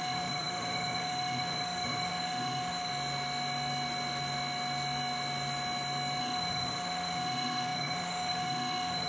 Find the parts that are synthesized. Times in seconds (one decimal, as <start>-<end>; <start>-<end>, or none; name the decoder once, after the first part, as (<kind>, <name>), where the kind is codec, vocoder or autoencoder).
0.0-2.9 (autoencoder, DAC-VAE); 6.2-9.1